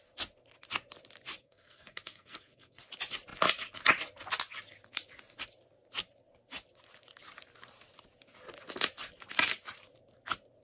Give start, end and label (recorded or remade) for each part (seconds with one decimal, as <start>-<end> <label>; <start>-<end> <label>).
0.0-1.4 recorded; 1.4-2.8 remade; 2.8-10.6 recorded